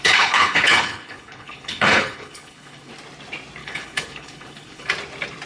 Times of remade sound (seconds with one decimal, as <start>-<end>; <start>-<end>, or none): 0.0-2.9; 3.6-4.9